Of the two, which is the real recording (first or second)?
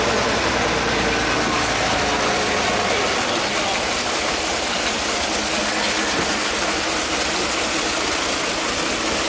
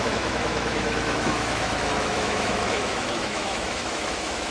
first